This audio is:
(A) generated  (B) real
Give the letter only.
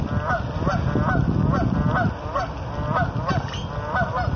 B